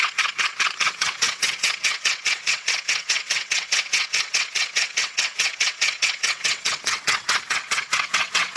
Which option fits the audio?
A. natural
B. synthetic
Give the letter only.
B